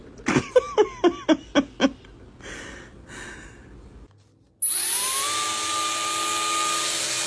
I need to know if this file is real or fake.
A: real